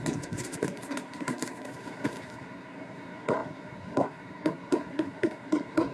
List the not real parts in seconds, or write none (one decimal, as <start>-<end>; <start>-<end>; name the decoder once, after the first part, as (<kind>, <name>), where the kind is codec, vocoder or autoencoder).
0.0-5.9 (codec, SNAC)